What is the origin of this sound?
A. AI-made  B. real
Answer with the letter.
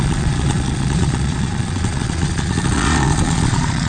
A